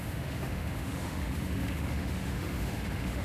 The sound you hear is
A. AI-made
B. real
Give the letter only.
A